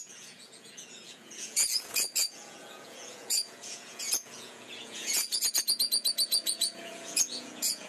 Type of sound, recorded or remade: remade